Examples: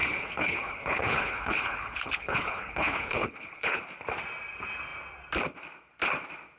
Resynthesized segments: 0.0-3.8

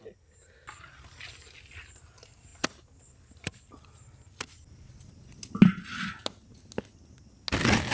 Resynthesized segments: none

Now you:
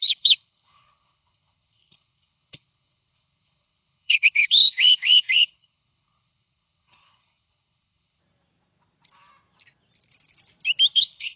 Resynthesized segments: 0.0-8.2; 10.9-11.4